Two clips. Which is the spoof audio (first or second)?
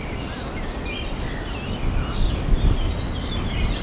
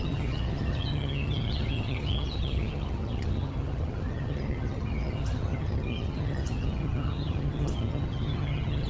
second